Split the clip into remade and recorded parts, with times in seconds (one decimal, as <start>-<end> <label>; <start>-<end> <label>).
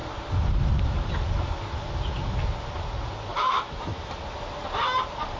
0.0-3.3 recorded; 3.3-4.1 remade; 4.1-5.4 recorded